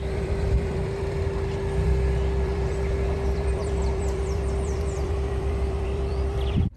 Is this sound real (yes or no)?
no